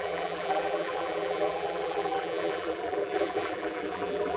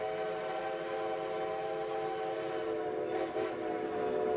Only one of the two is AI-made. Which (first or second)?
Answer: first